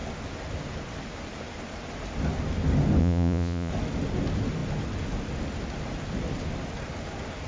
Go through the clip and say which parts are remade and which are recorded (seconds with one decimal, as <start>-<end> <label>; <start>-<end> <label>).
0.0-3.0 recorded; 3.0-3.7 remade; 3.7-7.5 recorded